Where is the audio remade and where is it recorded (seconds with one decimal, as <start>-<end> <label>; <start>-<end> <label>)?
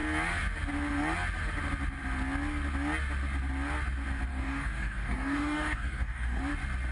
0.0-4.3 recorded; 4.3-6.4 remade; 6.4-6.9 recorded